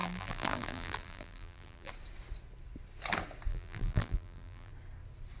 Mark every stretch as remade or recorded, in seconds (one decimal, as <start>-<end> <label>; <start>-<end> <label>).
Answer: 0.0-1.9 remade; 1.9-3.5 recorded; 3.5-4.7 remade; 4.7-5.4 recorded